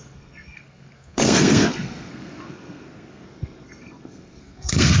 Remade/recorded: remade